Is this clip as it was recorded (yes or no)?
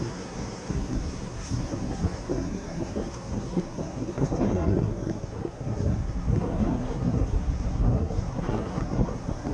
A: no